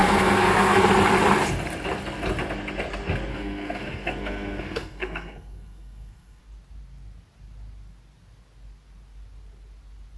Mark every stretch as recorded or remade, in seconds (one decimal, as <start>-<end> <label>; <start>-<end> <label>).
0.0-0.9 remade; 0.9-3.3 recorded; 3.3-6.4 remade; 6.4-10.2 recorded